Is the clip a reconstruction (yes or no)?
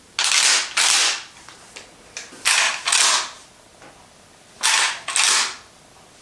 no